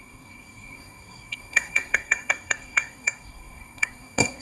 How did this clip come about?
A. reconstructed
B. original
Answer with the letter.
A